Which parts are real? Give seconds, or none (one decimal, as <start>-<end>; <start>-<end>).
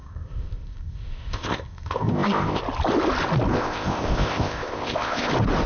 2.6-3.5; 5.3-5.7